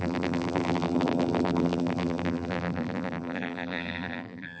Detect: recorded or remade remade